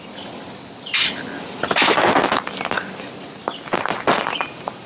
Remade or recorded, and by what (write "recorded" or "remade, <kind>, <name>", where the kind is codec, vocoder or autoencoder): recorded